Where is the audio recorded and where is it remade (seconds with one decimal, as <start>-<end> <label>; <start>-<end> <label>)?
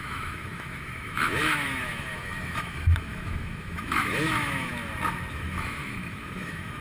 0.0-4.7 remade; 4.7-5.3 recorded; 5.3-6.8 remade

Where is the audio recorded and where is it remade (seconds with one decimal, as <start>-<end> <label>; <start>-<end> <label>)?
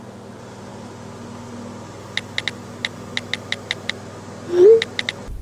0.0-5.4 recorded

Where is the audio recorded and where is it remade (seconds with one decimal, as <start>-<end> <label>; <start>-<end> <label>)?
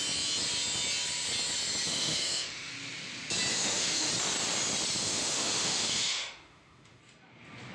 0.0-1.9 recorded; 1.9-2.7 remade; 2.7-3.5 recorded; 3.5-4.1 remade; 4.1-5.0 recorded; 5.0-7.0 remade; 7.0-7.7 recorded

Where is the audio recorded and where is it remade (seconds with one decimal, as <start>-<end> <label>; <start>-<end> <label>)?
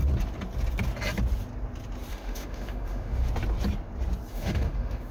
0.0-2.1 recorded; 2.1-3.3 remade; 3.3-4.3 recorded; 4.3-5.1 remade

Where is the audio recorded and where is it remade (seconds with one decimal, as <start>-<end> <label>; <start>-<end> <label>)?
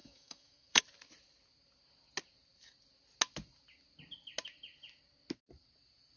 0.0-0.8 remade; 0.8-6.2 recorded